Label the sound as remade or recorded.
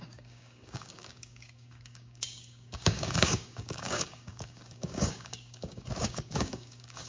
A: remade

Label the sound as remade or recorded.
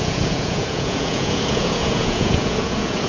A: remade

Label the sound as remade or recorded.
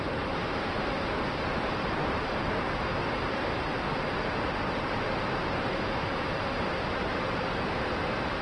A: remade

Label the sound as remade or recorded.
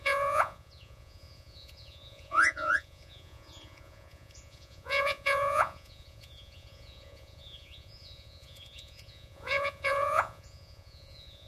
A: remade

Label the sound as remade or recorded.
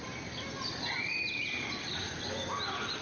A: recorded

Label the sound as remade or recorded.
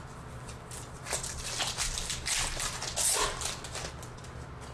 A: recorded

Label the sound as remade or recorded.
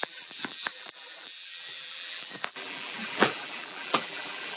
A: remade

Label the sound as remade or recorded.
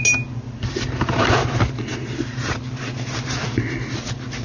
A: recorded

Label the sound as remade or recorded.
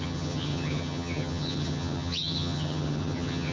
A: remade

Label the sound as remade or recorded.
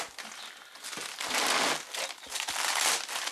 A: recorded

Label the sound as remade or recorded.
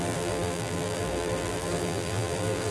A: remade